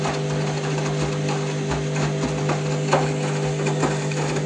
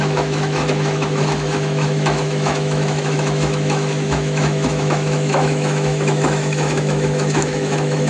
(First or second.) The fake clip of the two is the second